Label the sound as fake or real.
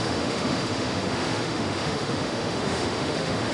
fake